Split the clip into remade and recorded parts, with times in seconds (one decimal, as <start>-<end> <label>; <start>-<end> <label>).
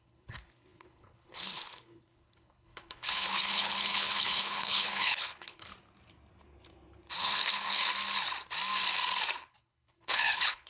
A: 0.0-5.7 remade; 5.7-7.2 recorded; 7.2-7.8 remade; 7.8-9.5 recorded; 9.5-10.7 remade